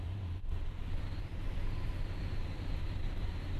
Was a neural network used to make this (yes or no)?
yes